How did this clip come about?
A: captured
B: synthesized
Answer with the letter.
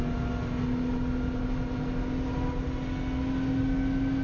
A